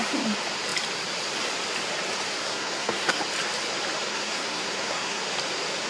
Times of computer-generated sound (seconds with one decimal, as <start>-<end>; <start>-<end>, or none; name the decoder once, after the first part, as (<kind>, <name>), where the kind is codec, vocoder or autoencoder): 2.4-3.2 (codec, SNAC); 4.1-5.2